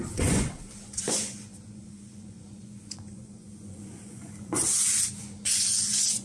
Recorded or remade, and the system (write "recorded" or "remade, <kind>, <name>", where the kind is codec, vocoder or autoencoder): remade, vocoder, Vocos